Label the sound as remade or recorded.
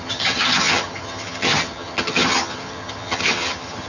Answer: remade